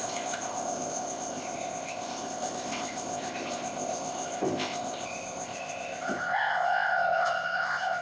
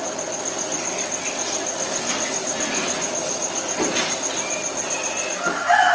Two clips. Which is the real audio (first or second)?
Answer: second